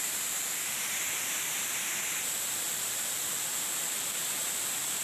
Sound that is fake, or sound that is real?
fake